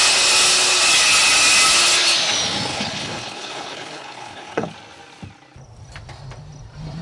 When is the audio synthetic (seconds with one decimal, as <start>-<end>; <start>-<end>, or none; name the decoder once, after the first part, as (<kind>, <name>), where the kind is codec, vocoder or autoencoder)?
2.7-4.7 (codec, HILCodec)